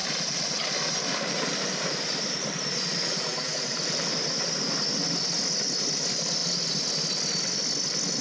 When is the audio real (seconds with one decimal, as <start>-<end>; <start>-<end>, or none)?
4.1-8.2